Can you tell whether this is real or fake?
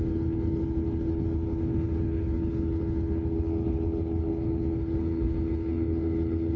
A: fake